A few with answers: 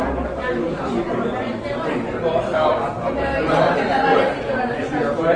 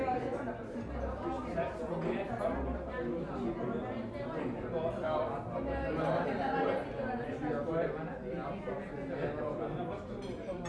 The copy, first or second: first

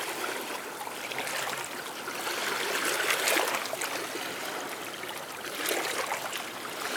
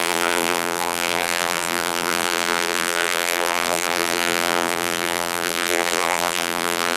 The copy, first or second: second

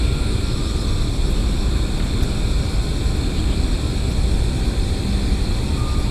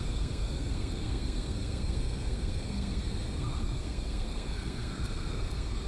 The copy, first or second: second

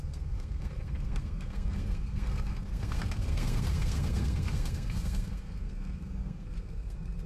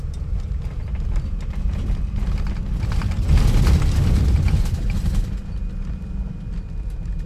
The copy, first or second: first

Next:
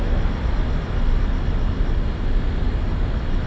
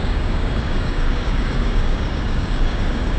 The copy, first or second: second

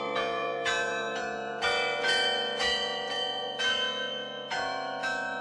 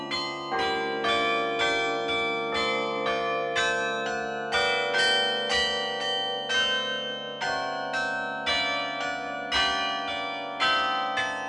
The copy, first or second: first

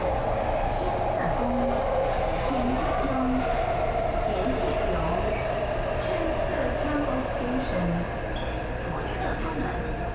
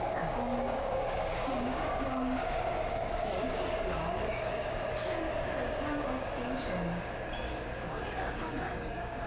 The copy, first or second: second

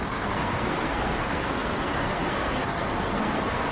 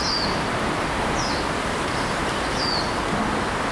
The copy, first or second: first